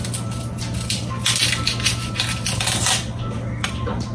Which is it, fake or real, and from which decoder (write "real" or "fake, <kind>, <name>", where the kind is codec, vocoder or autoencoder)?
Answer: real